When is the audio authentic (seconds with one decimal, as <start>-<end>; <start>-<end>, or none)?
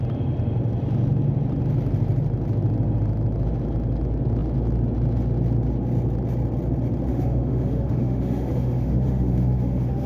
0.0-7.1